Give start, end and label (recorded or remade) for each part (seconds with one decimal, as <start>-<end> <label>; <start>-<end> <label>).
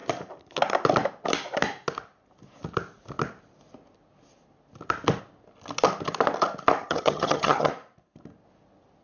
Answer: 0.0-6.8 recorded; 6.8-7.7 remade; 7.7-9.0 recorded